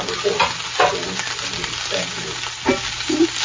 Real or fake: real